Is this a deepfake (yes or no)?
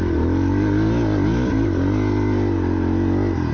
no